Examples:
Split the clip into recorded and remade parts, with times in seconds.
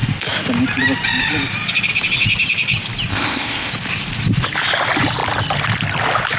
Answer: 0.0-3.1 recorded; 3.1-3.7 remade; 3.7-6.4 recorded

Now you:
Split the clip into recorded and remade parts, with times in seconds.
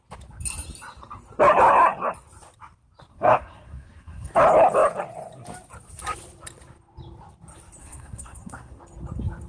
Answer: 0.0-3.1 recorded; 3.1-4.3 remade; 4.3-7.8 recorded; 7.8-8.8 remade; 8.8-9.5 recorded